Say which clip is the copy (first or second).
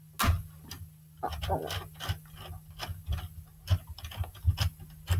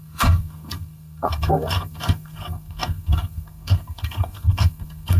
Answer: second